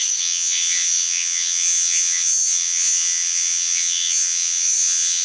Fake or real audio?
fake